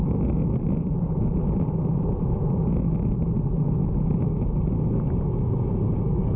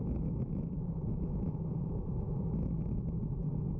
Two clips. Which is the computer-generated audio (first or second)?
second